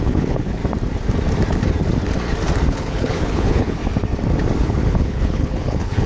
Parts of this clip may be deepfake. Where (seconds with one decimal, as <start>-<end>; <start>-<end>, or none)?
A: 0.0-0.6; 2.7-3.8; 4.6-6.1